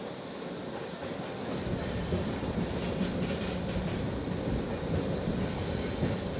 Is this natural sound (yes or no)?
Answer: yes